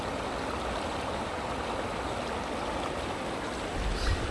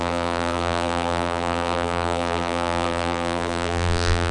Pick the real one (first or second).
first